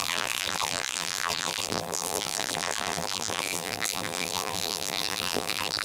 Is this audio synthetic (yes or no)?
yes